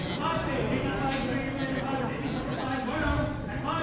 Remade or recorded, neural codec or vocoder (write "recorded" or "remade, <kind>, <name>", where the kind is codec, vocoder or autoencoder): recorded